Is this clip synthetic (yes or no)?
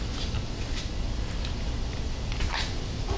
no